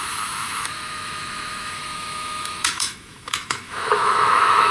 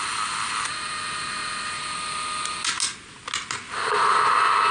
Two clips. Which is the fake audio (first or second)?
first